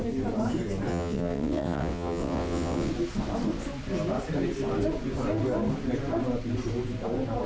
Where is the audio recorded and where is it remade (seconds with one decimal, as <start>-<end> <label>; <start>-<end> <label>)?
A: 0.0-0.9 recorded; 0.9-2.9 remade; 2.9-7.5 recorded